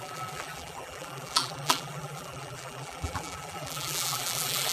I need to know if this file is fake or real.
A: fake